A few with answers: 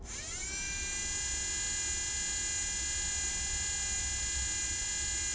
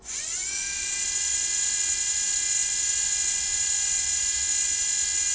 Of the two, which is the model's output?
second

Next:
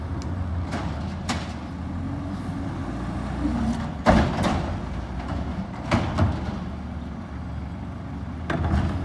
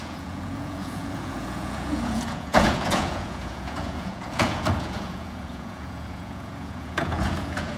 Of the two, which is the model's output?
second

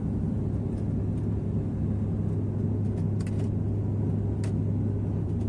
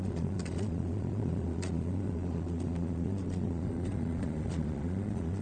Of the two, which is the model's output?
second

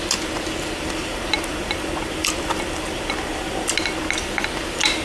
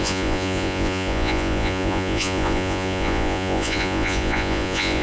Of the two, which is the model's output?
second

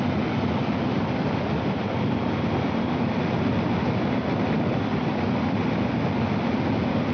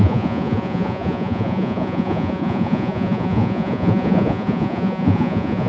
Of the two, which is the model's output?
second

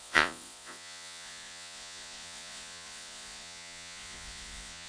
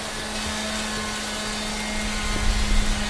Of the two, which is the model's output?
first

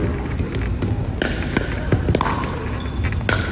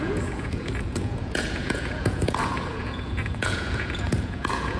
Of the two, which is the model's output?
second